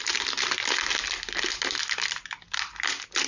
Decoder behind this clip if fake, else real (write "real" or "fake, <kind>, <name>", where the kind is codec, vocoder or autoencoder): real